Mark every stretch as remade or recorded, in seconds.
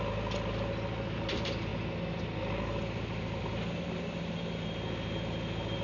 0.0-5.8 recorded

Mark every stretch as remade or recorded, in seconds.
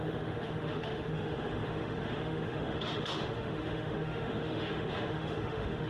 0.0-5.9 remade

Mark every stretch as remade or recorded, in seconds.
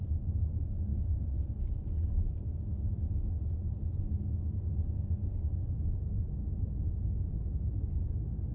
0.0-8.5 recorded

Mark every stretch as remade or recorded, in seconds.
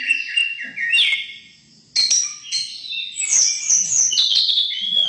0.0-0.4 remade; 0.4-3.2 recorded; 3.2-5.1 remade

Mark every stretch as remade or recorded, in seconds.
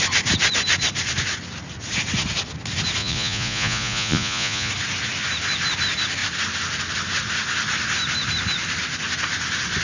0.0-3.0 recorded; 3.0-4.7 remade; 4.7-9.8 recorded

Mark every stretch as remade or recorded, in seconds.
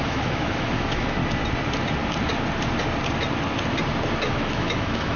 0.0-1.2 remade; 1.2-4.3 recorded; 4.3-5.2 remade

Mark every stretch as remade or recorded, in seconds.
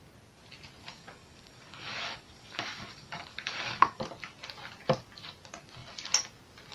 0.0-0.8 recorded; 0.8-4.0 remade; 4.0-6.7 recorded